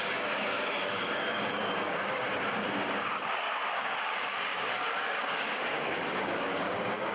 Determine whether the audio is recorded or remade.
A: remade